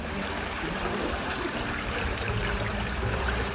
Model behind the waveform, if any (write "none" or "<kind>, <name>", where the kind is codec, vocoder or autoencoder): vocoder, BigVGAN v2